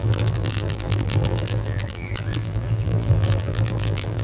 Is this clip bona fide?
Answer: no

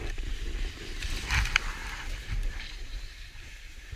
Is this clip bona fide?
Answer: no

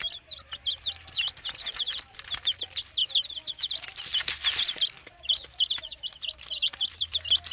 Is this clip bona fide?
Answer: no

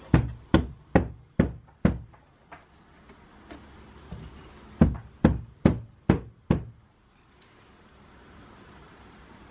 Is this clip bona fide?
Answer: yes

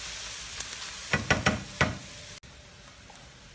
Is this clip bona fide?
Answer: yes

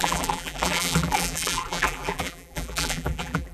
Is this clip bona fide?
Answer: no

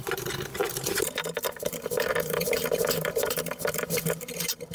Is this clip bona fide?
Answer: no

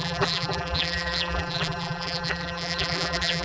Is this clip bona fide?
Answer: no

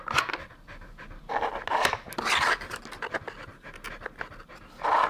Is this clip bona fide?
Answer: yes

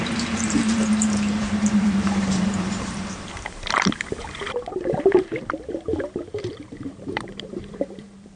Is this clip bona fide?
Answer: no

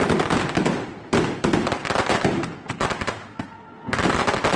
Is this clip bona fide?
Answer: yes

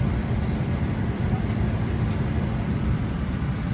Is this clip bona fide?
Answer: no